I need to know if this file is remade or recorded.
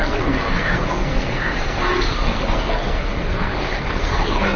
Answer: remade